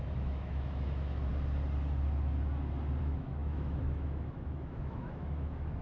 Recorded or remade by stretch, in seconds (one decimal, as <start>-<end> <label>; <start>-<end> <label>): 0.0-1.3 remade; 1.3-3.0 recorded; 3.0-5.8 remade